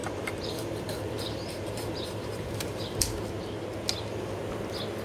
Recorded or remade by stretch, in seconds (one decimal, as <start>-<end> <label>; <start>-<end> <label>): 0.0-3.0 remade; 3.0-5.0 recorded